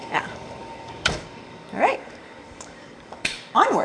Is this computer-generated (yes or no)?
yes